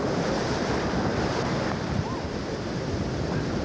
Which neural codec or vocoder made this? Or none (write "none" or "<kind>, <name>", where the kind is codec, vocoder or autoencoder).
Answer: vocoder, BigVGAN v2